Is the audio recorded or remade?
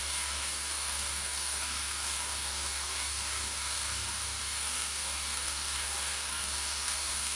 remade